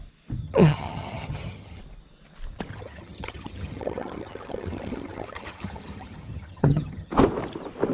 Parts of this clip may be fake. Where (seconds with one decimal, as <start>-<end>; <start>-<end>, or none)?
0.4-1.8; 2.7-7.1